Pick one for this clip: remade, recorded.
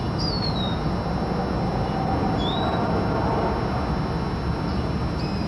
recorded